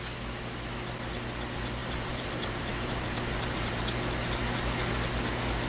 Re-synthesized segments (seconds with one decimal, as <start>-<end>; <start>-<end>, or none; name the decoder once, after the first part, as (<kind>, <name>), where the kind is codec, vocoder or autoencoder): 1.8-3.8 (vocoder, BigVGAN v2)